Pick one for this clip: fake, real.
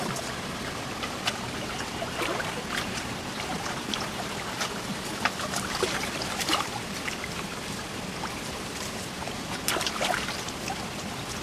fake